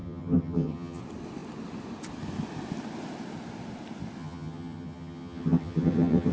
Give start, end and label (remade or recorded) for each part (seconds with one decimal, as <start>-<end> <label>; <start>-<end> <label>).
0.0-1.0 remade; 1.0-4.2 recorded; 4.2-6.3 remade